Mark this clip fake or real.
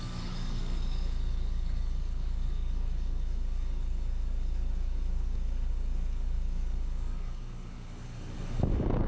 fake